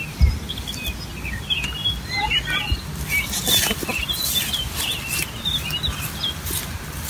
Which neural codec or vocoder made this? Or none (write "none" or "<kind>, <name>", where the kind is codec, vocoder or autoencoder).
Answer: none